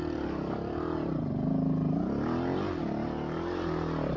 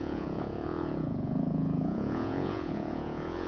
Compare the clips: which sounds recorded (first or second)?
first